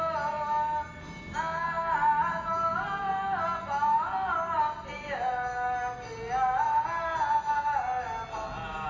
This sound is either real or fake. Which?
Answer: real